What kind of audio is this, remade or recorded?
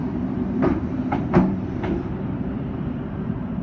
remade